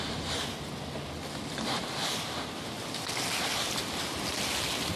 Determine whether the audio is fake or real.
real